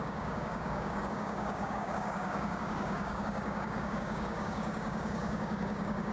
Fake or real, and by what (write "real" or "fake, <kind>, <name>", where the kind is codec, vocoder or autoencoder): fake, codec, DAC